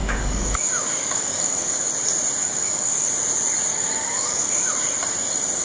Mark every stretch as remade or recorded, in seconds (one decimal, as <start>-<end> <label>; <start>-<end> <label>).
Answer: 0.0-1.9 remade; 1.9-2.4 recorded; 2.4-3.1 remade; 3.1-3.7 recorded; 3.7-4.7 remade; 4.7-5.6 recorded